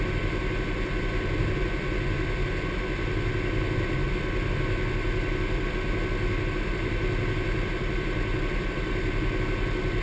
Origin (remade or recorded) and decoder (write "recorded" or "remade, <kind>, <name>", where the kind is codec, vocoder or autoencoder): recorded